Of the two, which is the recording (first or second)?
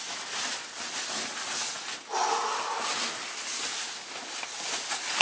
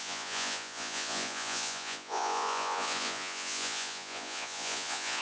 first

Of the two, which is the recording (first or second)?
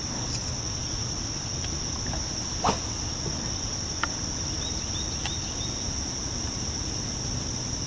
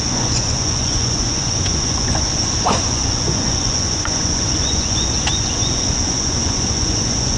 first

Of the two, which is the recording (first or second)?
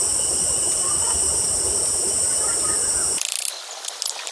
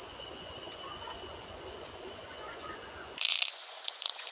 first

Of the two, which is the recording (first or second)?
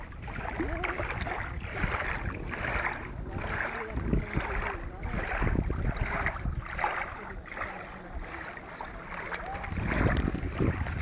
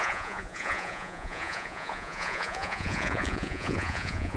first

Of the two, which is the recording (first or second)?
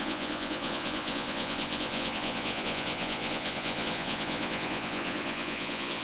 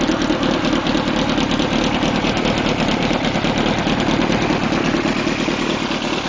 second